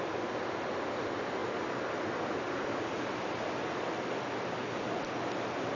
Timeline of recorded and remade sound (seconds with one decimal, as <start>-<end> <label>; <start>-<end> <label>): 0.0-5.7 recorded